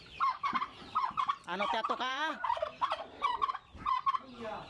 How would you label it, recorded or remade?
remade